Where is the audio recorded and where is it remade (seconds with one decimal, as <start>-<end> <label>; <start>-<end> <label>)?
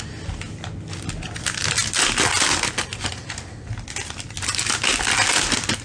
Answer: 0.0-5.8 recorded